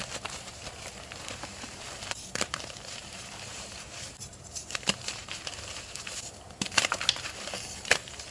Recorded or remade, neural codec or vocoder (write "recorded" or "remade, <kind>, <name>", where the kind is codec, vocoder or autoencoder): remade, vocoder, BigVGAN v2